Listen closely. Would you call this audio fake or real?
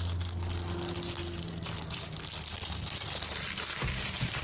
real